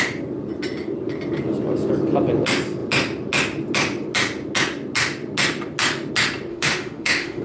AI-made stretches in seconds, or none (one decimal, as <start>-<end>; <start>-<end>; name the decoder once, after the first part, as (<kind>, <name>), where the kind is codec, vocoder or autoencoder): 6.5-7.4 (autoencoder, DAC-VAE)